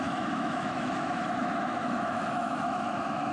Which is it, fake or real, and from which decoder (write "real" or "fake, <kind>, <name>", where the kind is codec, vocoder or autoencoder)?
fake, autoencoder, DAC-VAE